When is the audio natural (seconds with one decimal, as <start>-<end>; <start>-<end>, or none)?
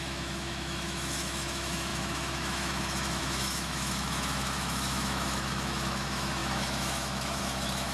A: none